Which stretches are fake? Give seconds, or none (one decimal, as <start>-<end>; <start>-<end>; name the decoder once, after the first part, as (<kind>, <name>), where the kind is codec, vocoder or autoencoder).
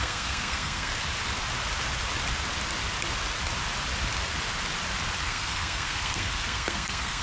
0.0-0.9 (codec, SNAC); 5.2-7.2